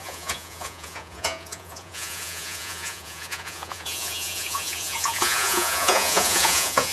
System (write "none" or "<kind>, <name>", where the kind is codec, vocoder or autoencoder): vocoder, Vocos